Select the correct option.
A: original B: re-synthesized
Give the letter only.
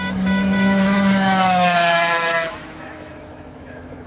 B